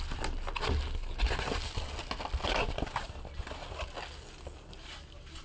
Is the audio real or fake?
real